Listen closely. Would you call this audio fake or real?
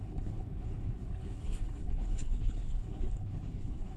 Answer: fake